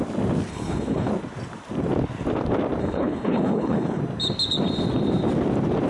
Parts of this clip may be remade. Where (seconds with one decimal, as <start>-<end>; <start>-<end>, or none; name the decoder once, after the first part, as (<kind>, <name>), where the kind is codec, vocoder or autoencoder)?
0.5-1.1 (codec, HILCodec); 2.8-4.0